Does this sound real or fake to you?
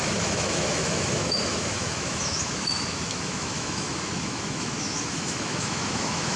fake